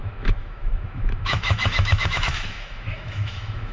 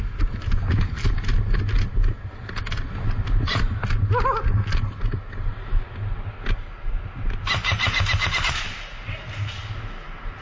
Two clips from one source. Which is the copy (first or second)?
first